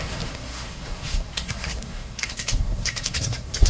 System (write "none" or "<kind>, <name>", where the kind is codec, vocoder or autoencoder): codec, SNAC